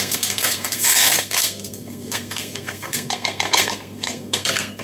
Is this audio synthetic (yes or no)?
yes